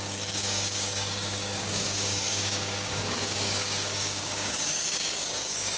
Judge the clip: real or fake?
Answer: fake